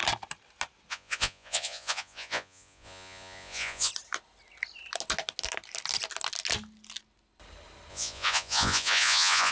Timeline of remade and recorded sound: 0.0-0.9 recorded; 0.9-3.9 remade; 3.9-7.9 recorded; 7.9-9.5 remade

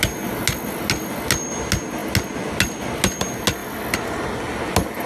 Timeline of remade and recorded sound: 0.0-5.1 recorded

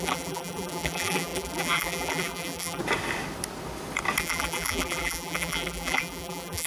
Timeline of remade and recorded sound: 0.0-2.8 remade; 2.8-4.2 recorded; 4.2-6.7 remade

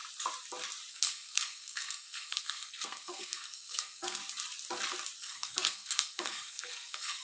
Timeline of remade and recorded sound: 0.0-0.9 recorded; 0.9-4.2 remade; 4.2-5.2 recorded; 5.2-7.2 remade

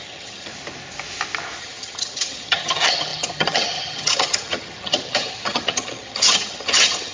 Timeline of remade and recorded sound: 0.0-0.5 remade; 0.5-1.6 recorded; 1.6-7.1 remade

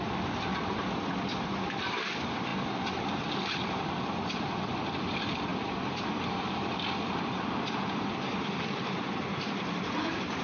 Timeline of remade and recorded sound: 0.0-2.5 remade; 2.5-3.3 recorded; 3.3-10.4 remade